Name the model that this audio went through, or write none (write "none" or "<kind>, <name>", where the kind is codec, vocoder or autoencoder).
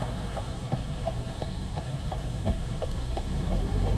codec, SNAC